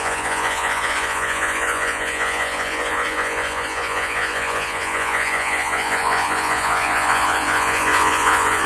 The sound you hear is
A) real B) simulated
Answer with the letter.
B